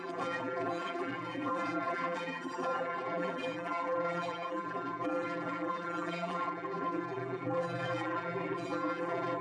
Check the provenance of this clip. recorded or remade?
remade